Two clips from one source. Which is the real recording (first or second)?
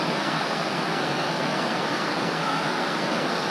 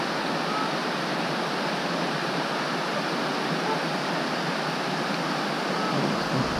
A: second